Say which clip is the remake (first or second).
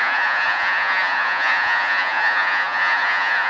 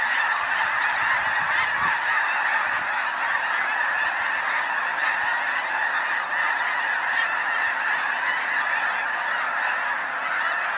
first